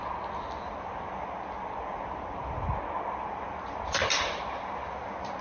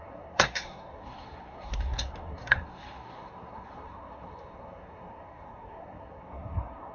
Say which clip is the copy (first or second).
second